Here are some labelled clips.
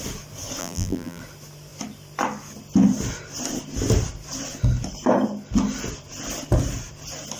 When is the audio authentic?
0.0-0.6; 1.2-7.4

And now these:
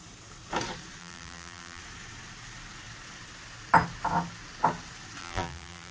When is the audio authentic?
0.0-1.0; 1.8-5.2

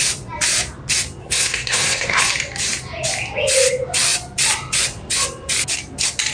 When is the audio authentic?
0.0-1.2; 2.2-6.3

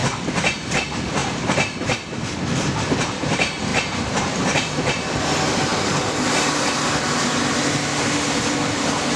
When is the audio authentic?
0.0-1.2; 2.2-3.7; 5.2-9.2

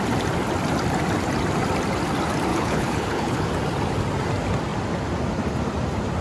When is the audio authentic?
0.0-2.5; 3.5-6.2